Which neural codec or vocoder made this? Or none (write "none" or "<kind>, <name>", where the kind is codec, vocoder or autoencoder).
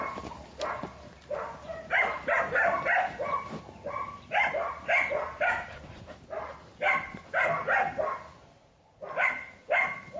vocoder, BigVGAN v2